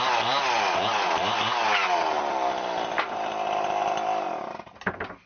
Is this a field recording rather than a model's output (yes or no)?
yes